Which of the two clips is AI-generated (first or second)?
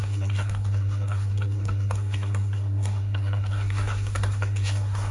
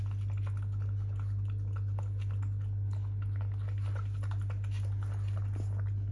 first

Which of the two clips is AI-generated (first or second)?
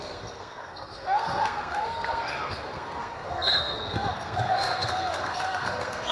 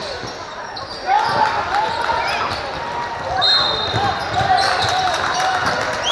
first